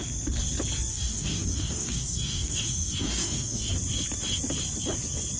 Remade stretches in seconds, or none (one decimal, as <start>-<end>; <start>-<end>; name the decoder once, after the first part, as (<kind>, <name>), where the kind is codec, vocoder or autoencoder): 0.9-3.7 (codec, DAC)